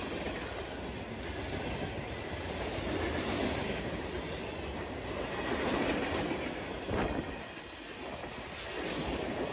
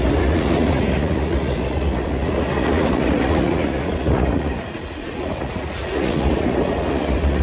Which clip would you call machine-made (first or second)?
second